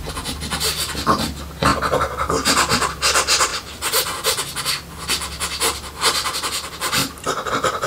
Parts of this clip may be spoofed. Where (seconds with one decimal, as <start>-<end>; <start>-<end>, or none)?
0.0-1.7; 2.5-3.5; 4.4-7.9